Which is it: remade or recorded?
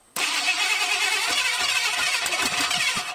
remade